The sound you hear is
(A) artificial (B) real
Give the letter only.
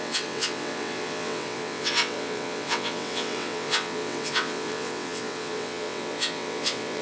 A